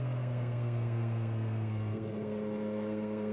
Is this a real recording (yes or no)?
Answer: no